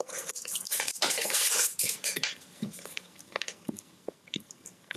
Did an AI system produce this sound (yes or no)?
yes